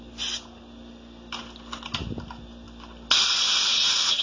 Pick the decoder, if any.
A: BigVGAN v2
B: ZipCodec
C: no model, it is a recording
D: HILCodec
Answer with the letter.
C